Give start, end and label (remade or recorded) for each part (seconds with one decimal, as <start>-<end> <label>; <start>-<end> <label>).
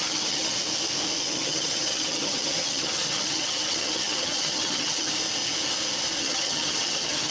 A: 0.0-0.6 remade; 0.6-1.2 recorded; 1.2-5.1 remade; 5.1-6.2 recorded; 6.2-7.3 remade